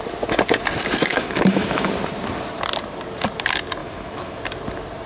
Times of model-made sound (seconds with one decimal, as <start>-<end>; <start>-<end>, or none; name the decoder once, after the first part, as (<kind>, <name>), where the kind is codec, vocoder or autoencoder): 1.1-1.9 (autoencoder, DAC-VAE); 3.8-4.4